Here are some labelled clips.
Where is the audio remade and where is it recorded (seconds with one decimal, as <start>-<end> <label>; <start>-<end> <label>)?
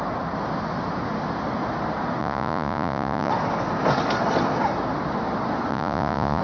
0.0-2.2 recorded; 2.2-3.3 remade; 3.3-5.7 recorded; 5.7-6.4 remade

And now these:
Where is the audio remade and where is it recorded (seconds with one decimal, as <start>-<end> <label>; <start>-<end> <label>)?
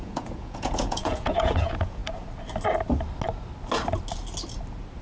0.0-2.0 remade; 2.0-5.0 recorded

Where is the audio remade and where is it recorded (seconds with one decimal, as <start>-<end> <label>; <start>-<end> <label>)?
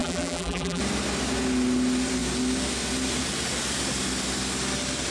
0.0-0.8 remade; 0.8-5.1 recorded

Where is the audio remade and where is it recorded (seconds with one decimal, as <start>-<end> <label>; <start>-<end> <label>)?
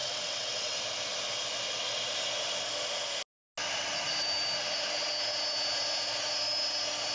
0.0-0.8 remade; 0.8-7.1 recorded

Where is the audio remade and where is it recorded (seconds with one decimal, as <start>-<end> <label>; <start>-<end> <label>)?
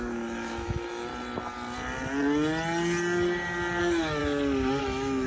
0.0-1.1 remade; 1.1-3.8 recorded; 3.8-4.2 remade; 4.2-4.8 recorded; 4.8-5.3 remade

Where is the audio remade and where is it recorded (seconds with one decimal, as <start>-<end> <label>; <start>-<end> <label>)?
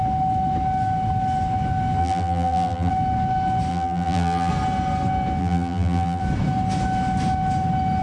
0.0-2.0 recorded; 2.0-2.9 remade; 2.9-3.7 recorded; 3.7-4.5 remade; 4.5-5.4 recorded; 5.4-6.2 remade; 6.2-8.0 recorded